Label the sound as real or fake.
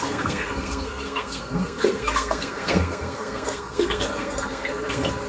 fake